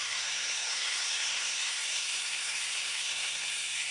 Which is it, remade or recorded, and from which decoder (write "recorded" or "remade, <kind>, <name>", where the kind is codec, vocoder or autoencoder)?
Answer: remade, codec, SNAC